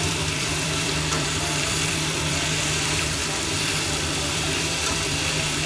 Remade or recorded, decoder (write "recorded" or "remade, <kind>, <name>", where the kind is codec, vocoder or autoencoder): remade, vocoder, BigVGAN v2